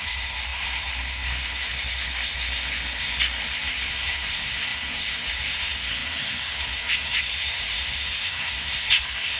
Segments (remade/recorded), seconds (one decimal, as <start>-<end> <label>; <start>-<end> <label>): 0.0-9.4 remade